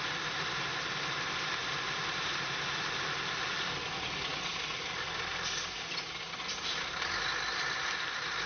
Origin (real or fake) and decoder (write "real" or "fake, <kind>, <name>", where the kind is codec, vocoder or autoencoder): real